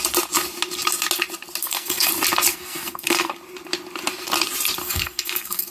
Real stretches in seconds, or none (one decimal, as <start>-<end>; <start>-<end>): 0.0-1.6; 2.1-2.5; 3.3-4.8